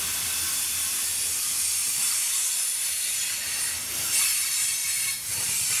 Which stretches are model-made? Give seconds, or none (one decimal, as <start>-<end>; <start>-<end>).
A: 1.8-3.2